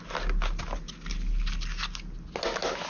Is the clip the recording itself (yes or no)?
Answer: yes